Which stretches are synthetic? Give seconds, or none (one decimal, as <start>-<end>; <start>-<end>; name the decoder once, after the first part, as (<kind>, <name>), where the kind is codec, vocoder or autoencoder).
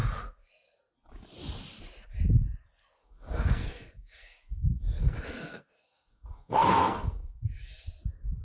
3.0-7.9 (codec, SNAC)